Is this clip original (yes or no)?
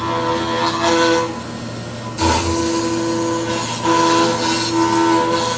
yes